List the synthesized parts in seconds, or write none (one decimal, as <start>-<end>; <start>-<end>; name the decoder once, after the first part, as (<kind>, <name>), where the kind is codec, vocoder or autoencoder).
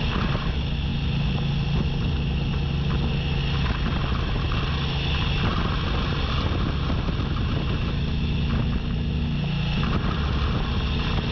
none